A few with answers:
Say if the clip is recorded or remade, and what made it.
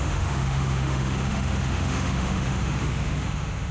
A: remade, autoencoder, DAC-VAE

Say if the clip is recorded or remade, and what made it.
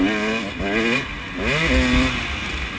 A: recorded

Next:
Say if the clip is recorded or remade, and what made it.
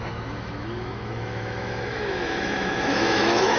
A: remade, autoencoder, DAC-VAE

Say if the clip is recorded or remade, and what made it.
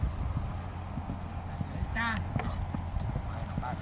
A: recorded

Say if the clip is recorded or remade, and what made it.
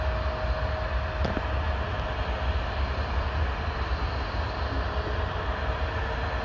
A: recorded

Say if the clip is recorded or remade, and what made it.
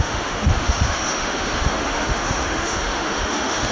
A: remade, autoencoder, DAC-VAE